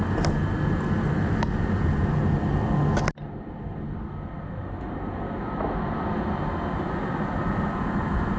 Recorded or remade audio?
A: recorded